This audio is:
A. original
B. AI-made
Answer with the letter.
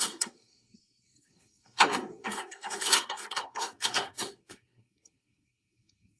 B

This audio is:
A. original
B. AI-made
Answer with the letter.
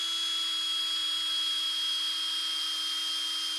A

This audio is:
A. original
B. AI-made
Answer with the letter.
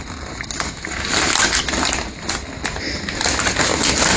A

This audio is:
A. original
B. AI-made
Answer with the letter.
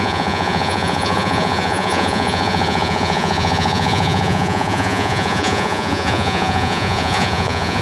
B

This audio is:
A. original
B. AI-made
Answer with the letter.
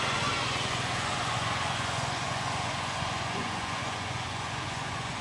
B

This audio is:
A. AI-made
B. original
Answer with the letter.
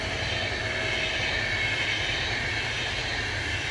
B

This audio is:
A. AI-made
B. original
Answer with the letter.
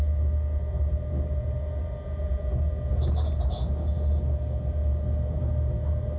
B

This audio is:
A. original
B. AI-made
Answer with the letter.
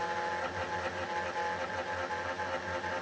A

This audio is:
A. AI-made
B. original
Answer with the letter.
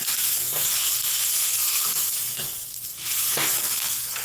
A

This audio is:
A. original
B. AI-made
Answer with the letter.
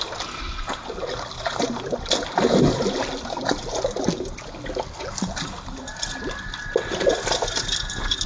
A